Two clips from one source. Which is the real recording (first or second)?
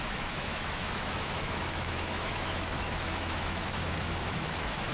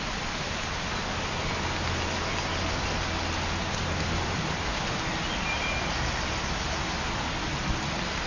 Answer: second